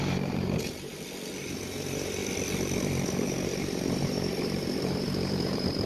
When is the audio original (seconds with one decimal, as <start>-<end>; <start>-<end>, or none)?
0.9-1.4; 2.2-2.8